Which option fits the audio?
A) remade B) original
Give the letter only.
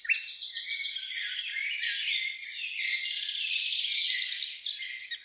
B